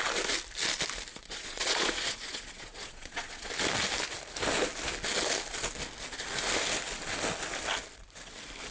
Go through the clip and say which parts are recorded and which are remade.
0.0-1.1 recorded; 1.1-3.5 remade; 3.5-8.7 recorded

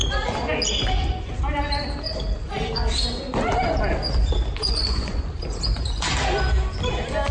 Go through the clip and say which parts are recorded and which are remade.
0.0-4.6 recorded; 4.6-5.4 remade; 5.4-7.3 recorded